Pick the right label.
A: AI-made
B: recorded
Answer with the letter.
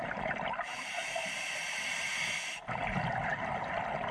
B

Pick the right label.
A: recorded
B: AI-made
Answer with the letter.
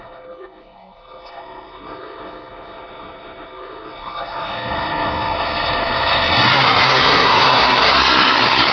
B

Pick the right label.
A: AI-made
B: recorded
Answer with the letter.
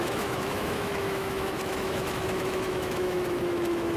A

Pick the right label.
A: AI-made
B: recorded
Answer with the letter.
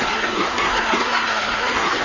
A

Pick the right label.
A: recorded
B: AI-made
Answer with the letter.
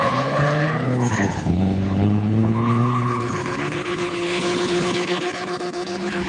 B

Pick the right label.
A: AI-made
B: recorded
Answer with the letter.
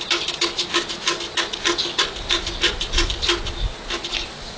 B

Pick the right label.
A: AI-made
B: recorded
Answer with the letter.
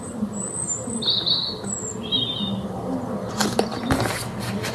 B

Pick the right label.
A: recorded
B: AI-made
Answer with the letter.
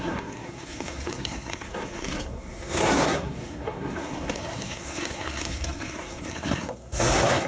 B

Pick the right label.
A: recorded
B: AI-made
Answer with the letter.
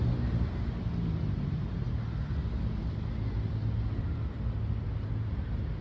A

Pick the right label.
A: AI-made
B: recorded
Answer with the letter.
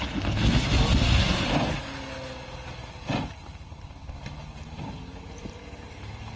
B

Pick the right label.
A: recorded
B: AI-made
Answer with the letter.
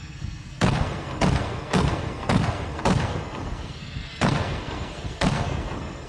B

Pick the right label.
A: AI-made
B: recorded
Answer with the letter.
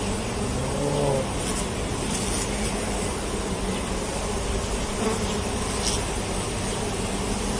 B